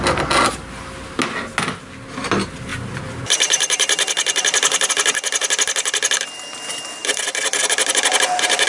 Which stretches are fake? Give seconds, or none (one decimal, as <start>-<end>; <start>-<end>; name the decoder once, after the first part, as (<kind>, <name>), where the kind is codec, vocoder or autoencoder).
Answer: 2.7-4.9 (vocoder, BigVGAN v2); 7.0-7.7